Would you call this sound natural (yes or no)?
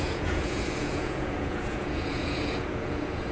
no